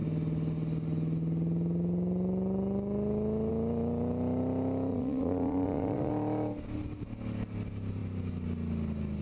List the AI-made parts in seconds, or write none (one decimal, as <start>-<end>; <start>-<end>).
4.9-6.1